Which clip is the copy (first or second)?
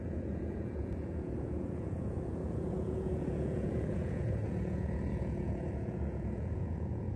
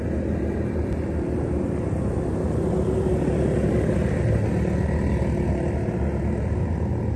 first